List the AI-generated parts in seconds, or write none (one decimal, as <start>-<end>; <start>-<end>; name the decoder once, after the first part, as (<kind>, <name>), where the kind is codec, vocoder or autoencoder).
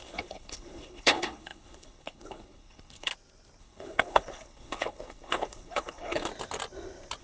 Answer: 0.0-3.1 (codec, HILCodec); 3.6-6.3